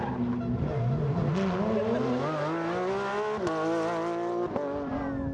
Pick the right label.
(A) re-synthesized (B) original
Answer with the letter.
B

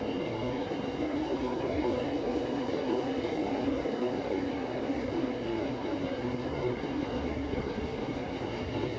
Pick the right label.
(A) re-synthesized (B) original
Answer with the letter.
A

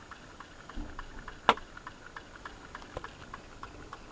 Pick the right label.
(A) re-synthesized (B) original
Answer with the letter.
B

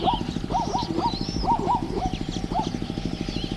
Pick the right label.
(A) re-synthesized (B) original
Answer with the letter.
B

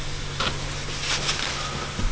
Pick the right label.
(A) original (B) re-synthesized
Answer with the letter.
A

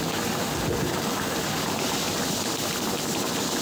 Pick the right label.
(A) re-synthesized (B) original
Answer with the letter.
B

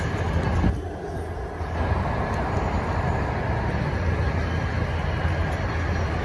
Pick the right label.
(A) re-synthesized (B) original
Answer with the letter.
B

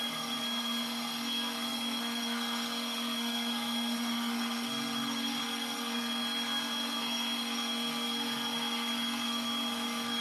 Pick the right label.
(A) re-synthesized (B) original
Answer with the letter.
A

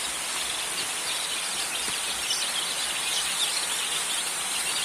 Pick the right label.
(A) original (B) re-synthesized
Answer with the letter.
A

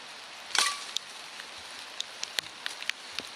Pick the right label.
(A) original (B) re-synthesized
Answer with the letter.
A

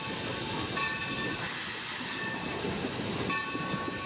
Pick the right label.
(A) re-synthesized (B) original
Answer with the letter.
B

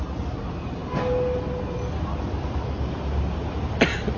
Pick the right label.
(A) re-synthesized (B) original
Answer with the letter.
B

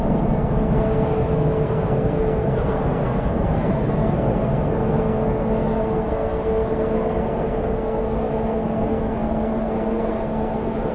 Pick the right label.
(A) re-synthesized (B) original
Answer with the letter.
A